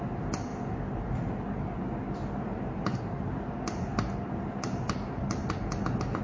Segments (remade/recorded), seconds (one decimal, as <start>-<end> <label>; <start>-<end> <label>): 0.0-4.7 recorded; 4.7-5.8 remade; 5.8-6.2 recorded